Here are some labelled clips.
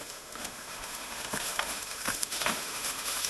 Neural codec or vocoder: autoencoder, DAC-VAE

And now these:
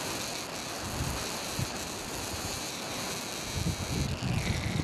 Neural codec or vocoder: none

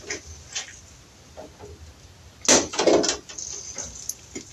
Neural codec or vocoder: none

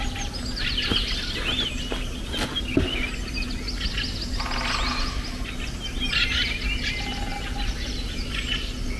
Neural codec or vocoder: none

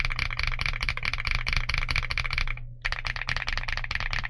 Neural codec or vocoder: none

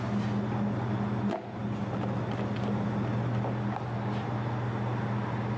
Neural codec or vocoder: none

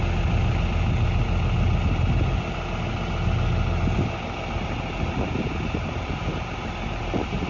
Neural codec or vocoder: none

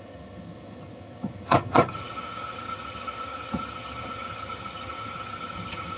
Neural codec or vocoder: vocoder, HiFi-GAN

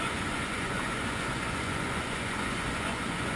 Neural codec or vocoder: vocoder, Vocos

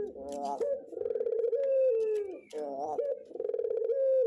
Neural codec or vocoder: none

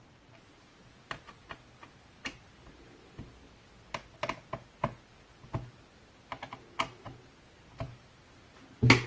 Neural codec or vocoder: none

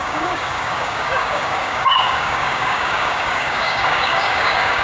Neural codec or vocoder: codec, DAC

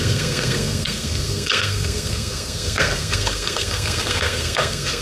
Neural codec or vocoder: codec, SNAC